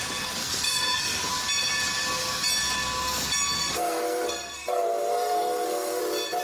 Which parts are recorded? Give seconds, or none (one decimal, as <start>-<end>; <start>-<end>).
0.0-0.4; 1.3-3.6; 6.0-6.4